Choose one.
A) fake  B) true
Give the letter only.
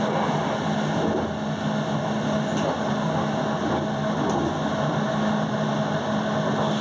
B